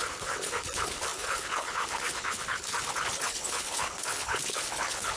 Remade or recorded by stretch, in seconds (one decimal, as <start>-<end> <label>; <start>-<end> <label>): 0.0-5.2 remade